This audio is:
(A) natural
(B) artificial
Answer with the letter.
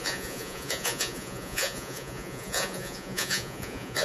B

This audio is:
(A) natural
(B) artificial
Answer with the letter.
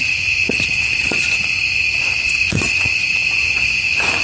B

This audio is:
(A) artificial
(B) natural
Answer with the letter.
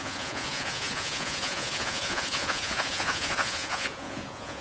A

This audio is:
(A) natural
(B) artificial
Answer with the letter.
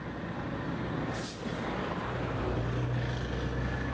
A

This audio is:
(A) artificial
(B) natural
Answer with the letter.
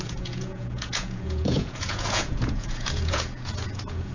A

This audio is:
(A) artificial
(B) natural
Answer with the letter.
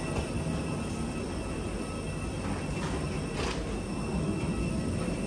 B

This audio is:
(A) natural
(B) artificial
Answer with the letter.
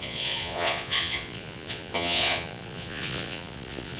B